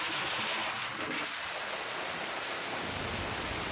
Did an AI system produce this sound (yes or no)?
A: no